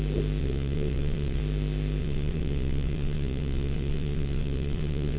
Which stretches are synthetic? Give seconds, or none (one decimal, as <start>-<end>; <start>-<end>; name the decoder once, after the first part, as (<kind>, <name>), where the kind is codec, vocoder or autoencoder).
0.4-1.4 (vocoder, WaveNeXt); 2.0-5.2

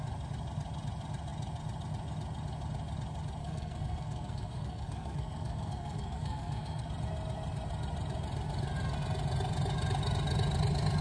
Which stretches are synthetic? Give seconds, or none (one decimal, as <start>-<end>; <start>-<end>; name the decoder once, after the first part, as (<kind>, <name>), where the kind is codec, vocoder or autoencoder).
3.4-6.9 (codec, SNAC)